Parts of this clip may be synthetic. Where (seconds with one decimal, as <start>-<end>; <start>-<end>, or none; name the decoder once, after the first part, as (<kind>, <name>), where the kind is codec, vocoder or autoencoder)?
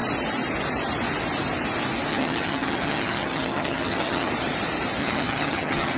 2.1-4.3 (vocoder, HiFi-GAN); 5.0-6.0